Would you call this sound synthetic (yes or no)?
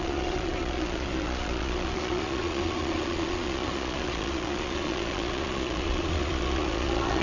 yes